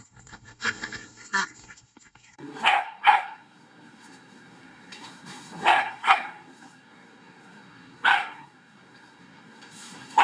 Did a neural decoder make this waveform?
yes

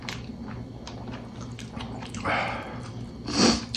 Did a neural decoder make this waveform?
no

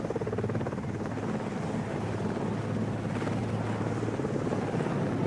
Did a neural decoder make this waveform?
no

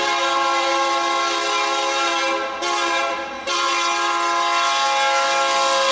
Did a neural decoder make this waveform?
no